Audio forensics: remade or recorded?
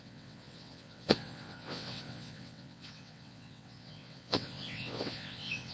remade